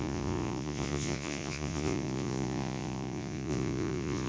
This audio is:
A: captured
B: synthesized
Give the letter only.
B